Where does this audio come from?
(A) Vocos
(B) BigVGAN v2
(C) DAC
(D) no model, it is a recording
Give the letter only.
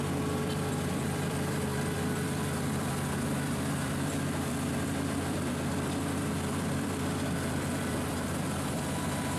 B